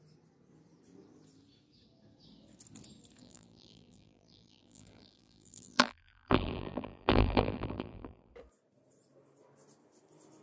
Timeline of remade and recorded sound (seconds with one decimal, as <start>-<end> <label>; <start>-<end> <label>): 0.0-3.2 recorded; 3.2-8.3 remade; 8.3-10.4 recorded